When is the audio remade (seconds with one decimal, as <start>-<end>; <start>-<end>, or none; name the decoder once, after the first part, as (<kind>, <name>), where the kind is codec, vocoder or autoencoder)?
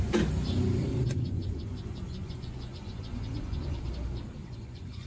0.9-3.9 (vocoder, Vocos); 4.4-5.1